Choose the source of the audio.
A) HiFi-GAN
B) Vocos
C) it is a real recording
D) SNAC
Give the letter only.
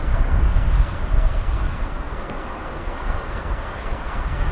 D